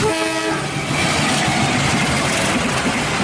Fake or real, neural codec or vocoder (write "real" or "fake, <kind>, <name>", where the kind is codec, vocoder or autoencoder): real